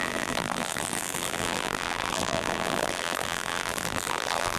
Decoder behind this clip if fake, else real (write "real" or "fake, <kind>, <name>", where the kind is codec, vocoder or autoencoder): fake, vocoder, BigVGAN v2